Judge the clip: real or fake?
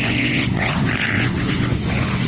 fake